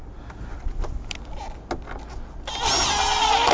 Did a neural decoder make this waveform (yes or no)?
no